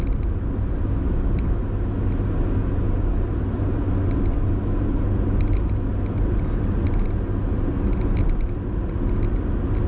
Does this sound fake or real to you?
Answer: real